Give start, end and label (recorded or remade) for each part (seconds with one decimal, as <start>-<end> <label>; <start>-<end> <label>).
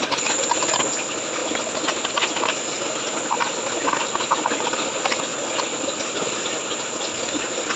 0.0-7.8 recorded